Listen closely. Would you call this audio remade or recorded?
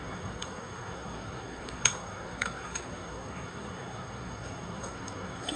remade